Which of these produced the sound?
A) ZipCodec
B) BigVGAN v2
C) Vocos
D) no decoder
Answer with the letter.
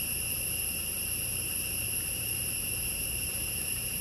D